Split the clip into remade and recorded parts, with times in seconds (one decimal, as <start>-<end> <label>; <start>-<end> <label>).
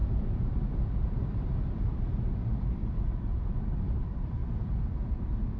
0.0-4.4 remade; 4.4-5.6 recorded